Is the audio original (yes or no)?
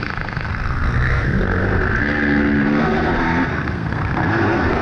no